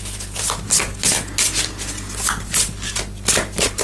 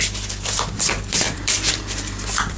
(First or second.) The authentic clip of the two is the first